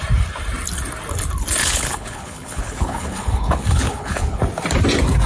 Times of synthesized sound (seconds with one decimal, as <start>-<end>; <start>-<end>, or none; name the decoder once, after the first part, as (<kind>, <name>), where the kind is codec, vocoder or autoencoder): 1.6-4.4 (codec, HILCodec)